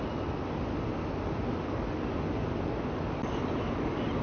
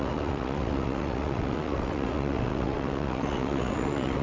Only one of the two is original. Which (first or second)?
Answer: first